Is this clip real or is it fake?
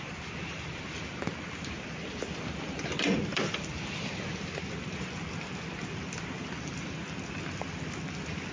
real